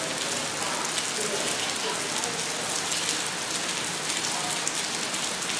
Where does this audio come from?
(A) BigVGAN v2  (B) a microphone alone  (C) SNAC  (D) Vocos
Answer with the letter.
B